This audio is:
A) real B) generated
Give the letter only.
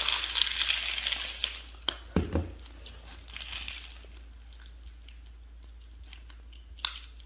A